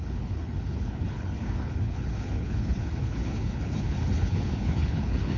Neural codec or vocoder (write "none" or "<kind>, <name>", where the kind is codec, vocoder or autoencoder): codec, HILCodec